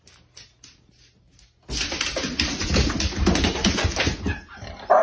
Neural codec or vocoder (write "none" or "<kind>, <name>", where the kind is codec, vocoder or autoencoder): none